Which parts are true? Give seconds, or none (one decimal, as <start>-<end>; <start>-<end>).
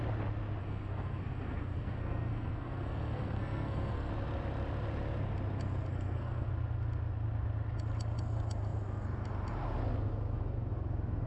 0.0-0.6; 4.1-5.9; 6.5-11.3